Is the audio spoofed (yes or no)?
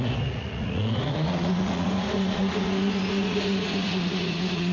yes